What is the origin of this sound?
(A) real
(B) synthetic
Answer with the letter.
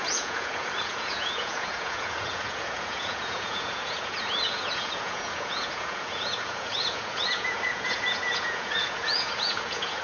B